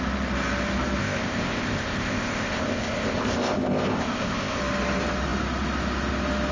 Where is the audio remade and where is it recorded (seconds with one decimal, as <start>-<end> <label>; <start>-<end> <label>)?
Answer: 0.0-1.0 recorded; 1.0-4.6 remade; 4.6-6.5 recorded